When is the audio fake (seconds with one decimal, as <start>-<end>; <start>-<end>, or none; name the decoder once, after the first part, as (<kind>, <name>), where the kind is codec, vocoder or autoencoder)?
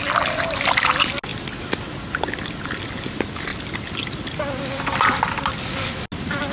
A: none